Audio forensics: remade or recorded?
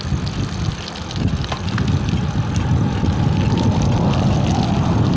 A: recorded